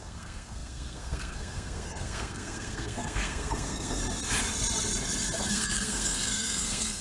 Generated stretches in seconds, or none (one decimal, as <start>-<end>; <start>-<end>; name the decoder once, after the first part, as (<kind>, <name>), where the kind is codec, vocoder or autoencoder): 0.0-4.0 (codec, SNAC); 5.5-7.0